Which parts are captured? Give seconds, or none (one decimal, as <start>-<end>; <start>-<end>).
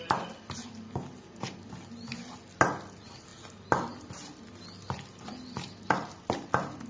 0.0-6.9